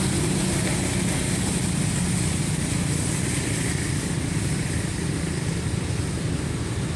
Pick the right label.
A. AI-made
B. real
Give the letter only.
B